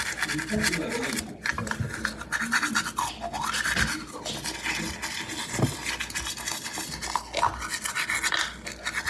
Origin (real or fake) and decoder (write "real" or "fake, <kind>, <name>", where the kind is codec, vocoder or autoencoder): real